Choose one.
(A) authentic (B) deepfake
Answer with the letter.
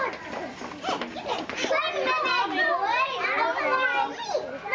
A